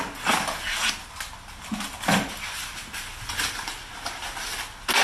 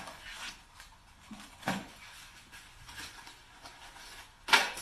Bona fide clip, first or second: first